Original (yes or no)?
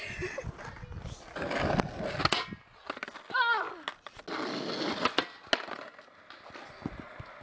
yes